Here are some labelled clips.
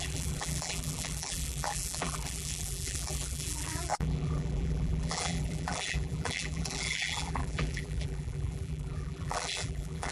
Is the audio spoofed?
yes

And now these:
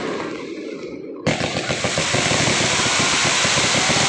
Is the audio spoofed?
no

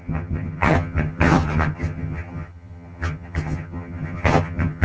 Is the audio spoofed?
yes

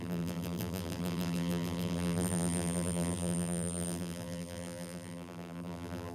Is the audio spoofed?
yes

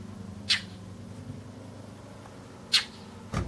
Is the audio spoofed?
no